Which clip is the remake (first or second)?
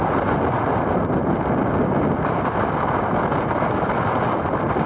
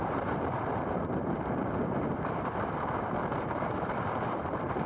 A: second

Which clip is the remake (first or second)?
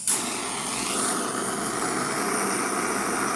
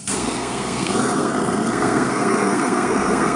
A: second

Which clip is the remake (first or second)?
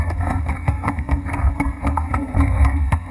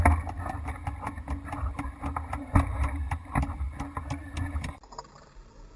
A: first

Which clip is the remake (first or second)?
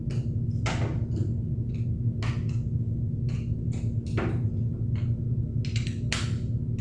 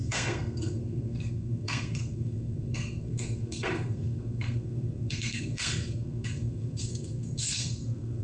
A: second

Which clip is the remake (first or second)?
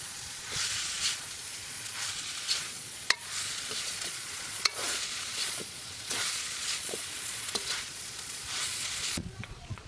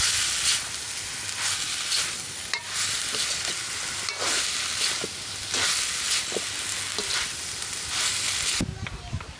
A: first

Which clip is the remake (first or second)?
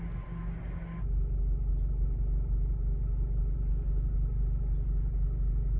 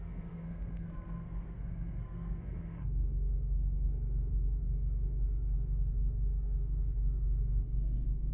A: second